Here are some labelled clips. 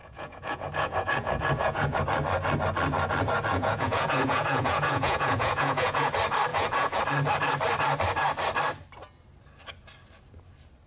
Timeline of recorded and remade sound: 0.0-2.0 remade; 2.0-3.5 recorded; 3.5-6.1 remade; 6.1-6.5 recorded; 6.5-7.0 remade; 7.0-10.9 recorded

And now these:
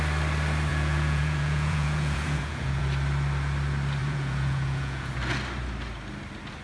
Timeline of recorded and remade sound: 0.0-0.7 recorded; 0.7-2.8 remade; 2.8-4.0 recorded; 4.0-5.1 remade; 5.1-6.6 recorded

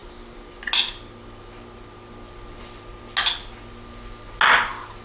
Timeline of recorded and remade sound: 0.0-5.0 recorded

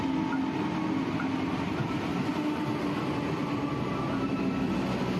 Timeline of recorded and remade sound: 0.0-5.2 recorded

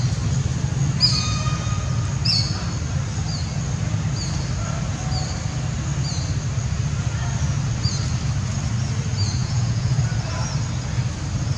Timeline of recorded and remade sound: 0.0-9.4 recorded; 9.4-10.0 remade; 10.0-11.6 recorded

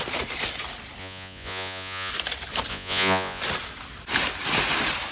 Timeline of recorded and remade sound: 0.0-1.0 recorded; 1.0-2.1 remade; 2.1-2.7 recorded; 2.7-3.4 remade; 3.4-5.1 recorded

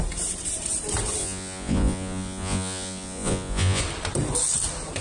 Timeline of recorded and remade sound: 0.0-1.2 recorded; 1.2-3.8 remade; 3.8-5.0 recorded

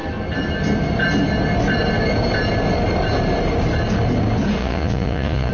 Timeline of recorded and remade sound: 0.0-4.6 recorded; 4.6-5.5 remade